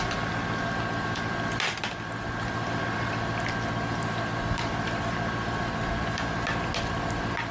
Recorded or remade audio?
recorded